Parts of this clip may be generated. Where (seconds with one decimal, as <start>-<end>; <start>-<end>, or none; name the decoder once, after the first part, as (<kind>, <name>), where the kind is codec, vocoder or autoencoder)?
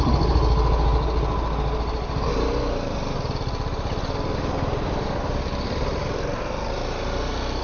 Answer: none